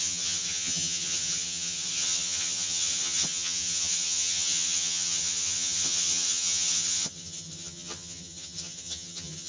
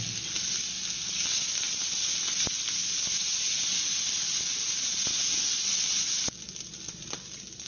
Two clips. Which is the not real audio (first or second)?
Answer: first